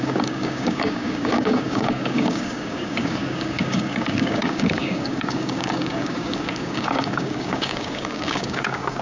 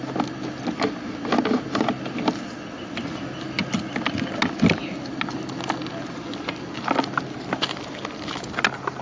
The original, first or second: second